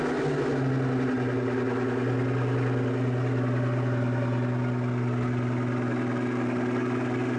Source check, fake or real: real